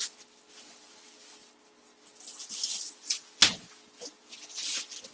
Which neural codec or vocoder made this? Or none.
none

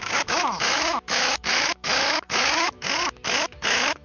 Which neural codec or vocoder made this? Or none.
autoencoder, DAC-VAE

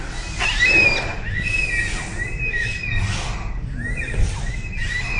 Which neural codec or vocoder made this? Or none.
none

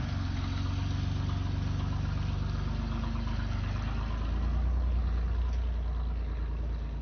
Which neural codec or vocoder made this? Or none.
none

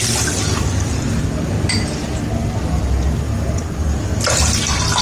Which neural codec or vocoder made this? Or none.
none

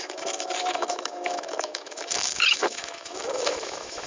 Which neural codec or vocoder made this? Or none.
autoencoder, DAC-VAE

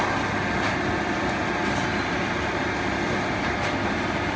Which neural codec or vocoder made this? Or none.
none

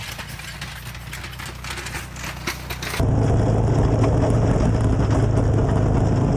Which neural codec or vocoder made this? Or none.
none